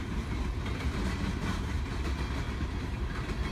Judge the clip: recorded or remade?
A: recorded